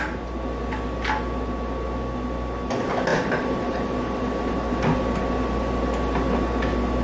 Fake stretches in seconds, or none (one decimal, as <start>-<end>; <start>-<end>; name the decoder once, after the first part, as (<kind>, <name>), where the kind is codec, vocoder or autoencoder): none